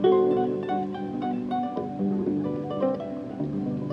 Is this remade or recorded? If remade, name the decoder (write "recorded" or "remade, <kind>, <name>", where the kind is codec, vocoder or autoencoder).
recorded